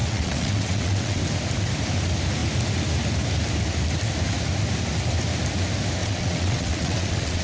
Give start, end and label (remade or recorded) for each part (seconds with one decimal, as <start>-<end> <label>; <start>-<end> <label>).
0.0-1.2 remade; 1.2-6.0 recorded; 6.0-7.4 remade